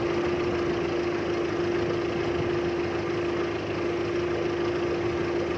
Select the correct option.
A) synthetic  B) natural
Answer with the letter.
B